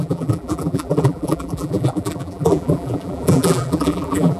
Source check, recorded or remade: remade